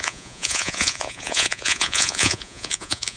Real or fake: fake